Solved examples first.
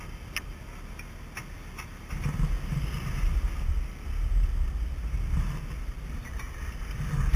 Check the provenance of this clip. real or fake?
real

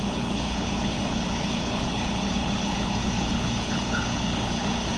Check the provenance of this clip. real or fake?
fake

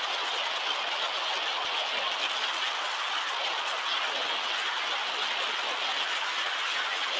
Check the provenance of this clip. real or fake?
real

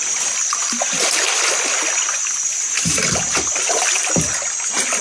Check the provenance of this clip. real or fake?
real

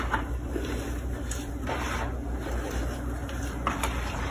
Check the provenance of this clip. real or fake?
fake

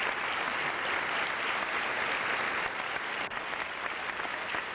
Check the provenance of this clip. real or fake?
real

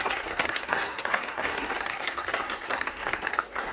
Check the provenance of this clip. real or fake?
fake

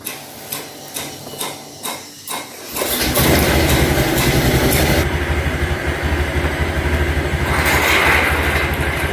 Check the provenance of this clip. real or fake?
real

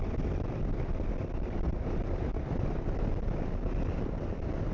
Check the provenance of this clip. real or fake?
real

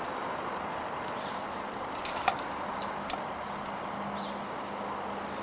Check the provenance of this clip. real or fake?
real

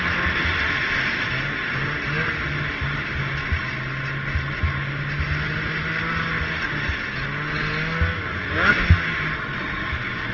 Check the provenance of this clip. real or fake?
real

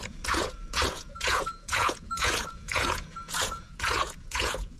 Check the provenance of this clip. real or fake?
fake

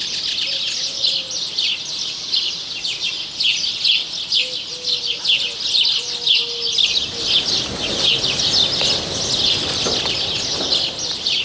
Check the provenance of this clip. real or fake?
real